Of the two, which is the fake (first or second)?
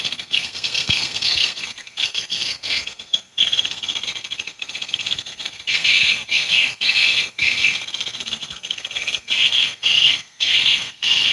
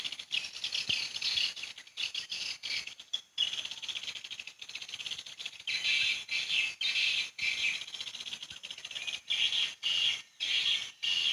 first